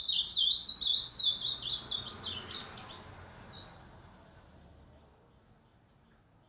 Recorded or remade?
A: recorded